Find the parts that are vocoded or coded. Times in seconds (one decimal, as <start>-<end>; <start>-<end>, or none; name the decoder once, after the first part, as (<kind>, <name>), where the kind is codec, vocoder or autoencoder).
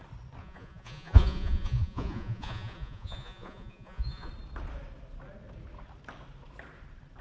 0.4-4.3 (vocoder, Vocos)